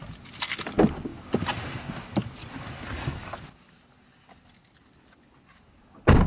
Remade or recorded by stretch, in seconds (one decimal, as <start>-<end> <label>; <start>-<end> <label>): 0.0-1.1 recorded; 1.1-1.9 remade; 1.9-2.4 recorded; 2.4-3.4 remade; 3.4-6.3 recorded